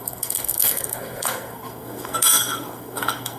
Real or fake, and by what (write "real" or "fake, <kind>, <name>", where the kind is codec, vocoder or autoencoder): fake, codec, SNAC